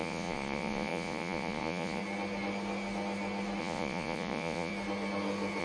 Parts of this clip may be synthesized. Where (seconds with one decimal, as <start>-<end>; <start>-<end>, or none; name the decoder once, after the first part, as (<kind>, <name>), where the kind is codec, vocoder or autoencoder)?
0.0-2.0 (vocoder, Vocos); 3.6-4.7